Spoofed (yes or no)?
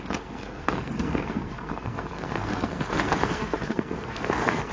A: yes